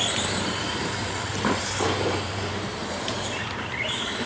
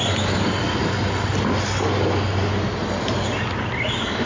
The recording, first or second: second